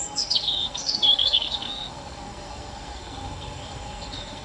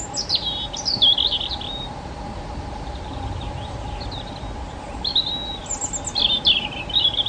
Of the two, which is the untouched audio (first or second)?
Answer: second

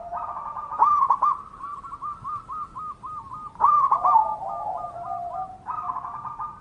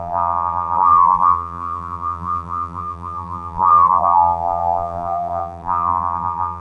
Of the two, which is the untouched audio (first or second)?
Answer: first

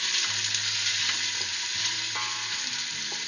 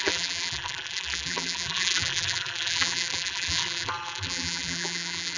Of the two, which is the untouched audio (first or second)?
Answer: first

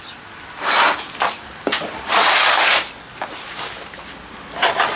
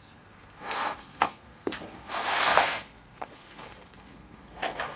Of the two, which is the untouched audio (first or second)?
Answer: first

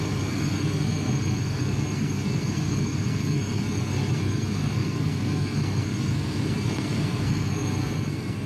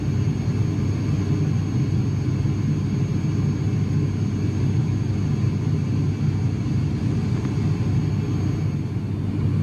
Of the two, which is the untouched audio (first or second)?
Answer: second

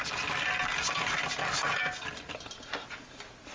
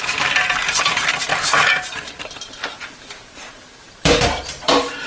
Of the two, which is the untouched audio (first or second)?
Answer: first